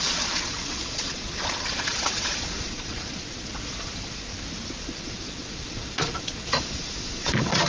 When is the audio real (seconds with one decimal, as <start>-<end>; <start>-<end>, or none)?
4.3-4.8